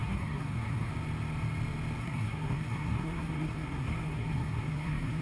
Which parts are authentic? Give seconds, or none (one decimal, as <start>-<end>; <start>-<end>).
0.9-2.0